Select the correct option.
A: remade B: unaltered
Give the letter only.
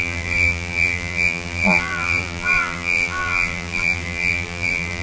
A